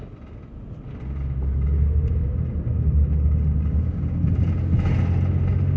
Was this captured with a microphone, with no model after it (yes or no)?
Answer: yes